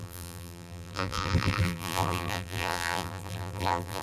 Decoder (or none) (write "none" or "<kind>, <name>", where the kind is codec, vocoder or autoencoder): vocoder, BigVGAN v2